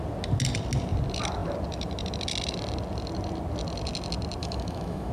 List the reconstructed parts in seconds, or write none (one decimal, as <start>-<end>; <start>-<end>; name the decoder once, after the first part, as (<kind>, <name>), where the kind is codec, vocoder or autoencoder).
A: 4.4-5.1 (autoencoder, DAC-VAE)